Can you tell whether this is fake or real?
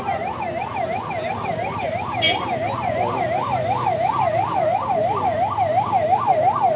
real